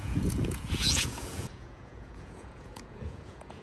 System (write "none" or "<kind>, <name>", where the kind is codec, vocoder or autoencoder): vocoder, Vocos